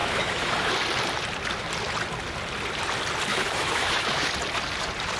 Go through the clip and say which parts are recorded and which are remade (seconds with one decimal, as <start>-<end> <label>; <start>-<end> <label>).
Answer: 0.0-0.7 remade; 0.7-3.3 recorded; 3.3-4.3 remade; 4.3-5.2 recorded